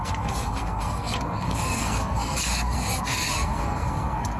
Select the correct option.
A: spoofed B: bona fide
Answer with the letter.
A